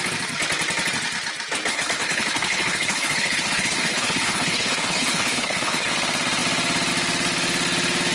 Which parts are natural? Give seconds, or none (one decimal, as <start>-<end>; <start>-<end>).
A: 0.0-1.7; 5.9-8.1